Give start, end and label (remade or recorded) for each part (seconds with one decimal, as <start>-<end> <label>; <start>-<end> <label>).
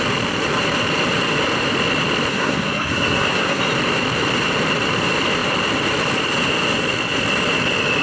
0.0-2.3 recorded; 2.3-3.6 remade; 3.6-8.0 recorded